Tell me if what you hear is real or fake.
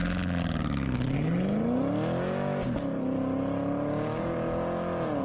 real